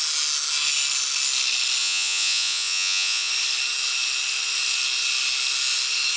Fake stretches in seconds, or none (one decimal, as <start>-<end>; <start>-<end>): 1.8-3.3